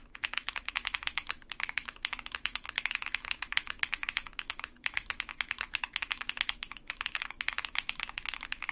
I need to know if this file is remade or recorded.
remade